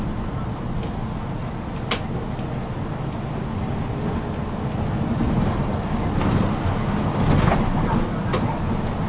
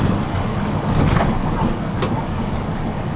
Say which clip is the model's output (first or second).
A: second